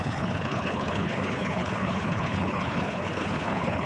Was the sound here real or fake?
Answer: fake